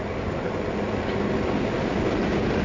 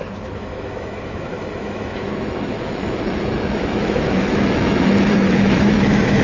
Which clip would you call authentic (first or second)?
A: first